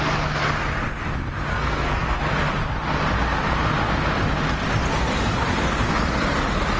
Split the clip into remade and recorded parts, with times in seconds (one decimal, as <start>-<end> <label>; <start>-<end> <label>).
0.0-1.5 recorded; 1.5-2.2 remade; 2.2-6.8 recorded